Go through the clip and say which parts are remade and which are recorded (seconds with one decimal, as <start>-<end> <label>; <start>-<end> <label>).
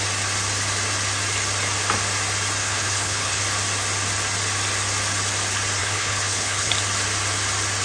0.0-2.6 recorded; 2.6-3.4 remade; 3.4-5.8 recorded; 5.8-6.7 remade; 6.7-7.8 recorded